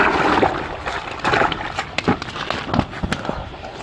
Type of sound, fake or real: real